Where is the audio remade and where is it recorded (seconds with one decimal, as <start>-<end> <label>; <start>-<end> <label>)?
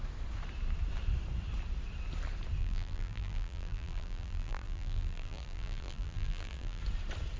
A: 0.0-2.6 recorded; 2.6-6.8 remade; 6.8-7.4 recorded